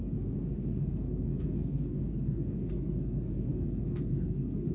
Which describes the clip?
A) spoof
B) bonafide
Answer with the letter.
A